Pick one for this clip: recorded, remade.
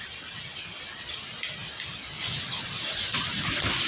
recorded